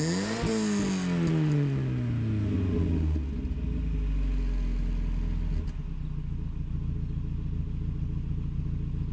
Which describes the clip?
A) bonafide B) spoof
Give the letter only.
A